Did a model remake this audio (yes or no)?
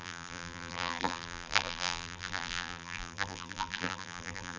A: yes